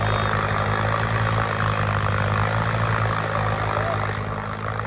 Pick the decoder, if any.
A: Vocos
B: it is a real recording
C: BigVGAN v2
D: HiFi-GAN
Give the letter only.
B